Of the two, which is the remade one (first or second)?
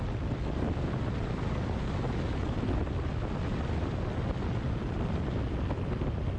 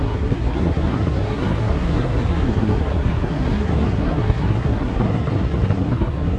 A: second